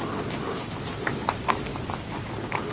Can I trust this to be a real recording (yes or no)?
yes